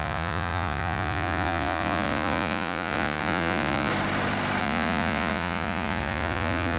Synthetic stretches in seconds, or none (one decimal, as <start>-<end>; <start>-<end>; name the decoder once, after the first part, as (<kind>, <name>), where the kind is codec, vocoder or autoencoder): 0.0-3.9 (vocoder, Vocos); 4.6-6.8